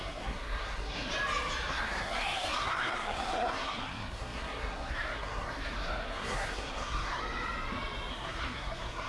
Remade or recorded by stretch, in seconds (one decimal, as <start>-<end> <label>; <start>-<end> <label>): 0.0-1.1 remade; 1.1-1.7 recorded; 1.7-7.2 remade; 7.2-8.1 recorded; 8.1-9.1 remade